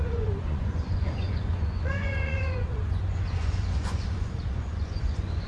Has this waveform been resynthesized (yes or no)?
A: yes